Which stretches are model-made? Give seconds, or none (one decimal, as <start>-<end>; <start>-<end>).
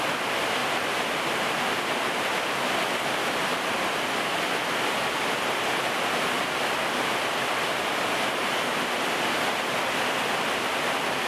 0.6-1.5